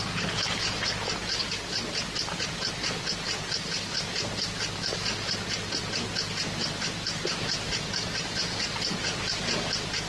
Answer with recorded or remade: recorded